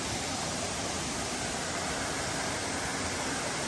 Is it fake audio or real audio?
real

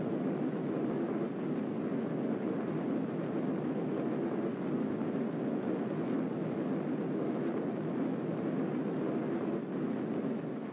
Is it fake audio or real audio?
real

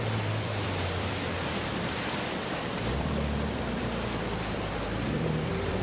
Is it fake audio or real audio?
fake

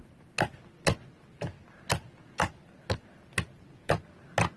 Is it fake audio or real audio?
real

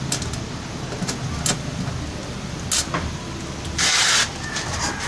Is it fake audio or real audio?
real